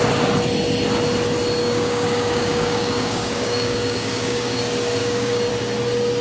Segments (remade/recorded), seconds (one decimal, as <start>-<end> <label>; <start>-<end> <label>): 0.0-1.6 recorded; 1.6-4.6 remade; 4.6-5.0 recorded; 5.0-5.5 remade; 5.5-6.2 recorded